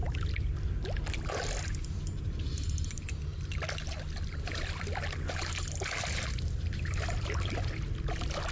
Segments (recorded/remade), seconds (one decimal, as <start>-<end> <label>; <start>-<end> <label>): 0.0-8.5 recorded